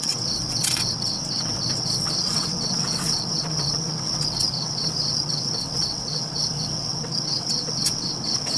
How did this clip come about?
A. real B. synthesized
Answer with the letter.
B